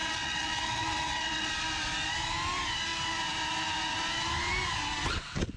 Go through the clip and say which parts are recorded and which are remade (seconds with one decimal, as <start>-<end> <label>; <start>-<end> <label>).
0.0-1.5 remade; 1.5-5.6 recorded